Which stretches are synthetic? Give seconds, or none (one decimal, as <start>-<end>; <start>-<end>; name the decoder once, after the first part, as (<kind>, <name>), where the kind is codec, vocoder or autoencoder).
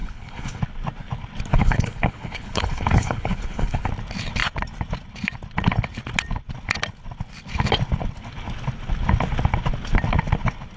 0.0-0.6 (codec, HILCodec); 1.5-3.9